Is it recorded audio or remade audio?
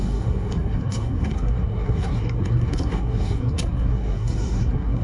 remade